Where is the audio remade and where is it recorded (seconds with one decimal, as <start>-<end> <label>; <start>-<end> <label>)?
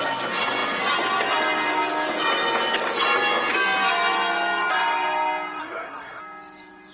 0.0-5.6 recorded; 5.6-6.2 remade; 6.2-6.9 recorded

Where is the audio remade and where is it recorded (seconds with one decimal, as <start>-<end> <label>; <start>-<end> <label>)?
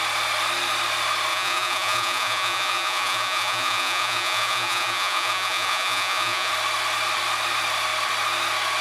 0.0-1.3 recorded; 1.3-6.5 remade; 6.5-8.8 recorded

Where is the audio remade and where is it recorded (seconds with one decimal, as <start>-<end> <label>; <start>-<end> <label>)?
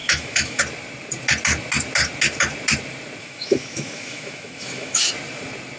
0.0-0.6 remade; 0.6-3.2 recorded; 3.2-5.1 remade; 5.1-5.8 recorded